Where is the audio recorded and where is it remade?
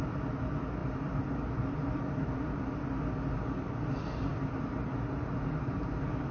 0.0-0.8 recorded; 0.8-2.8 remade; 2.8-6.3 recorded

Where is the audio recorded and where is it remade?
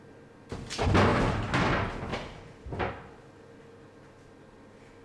0.0-1.1 recorded; 1.1-1.7 remade; 1.7-2.1 recorded; 2.1-2.9 remade; 2.9-5.0 recorded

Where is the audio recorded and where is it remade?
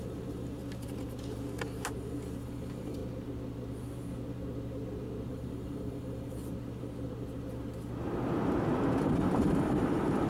0.0-0.6 remade; 0.6-2.0 recorded; 2.0-3.0 remade; 3.0-5.3 recorded; 5.3-6.4 remade; 6.4-9.0 recorded; 9.0-10.3 remade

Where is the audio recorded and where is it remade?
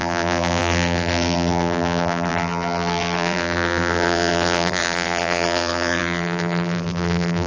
0.0-7.5 remade